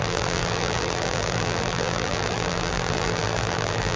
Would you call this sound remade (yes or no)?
yes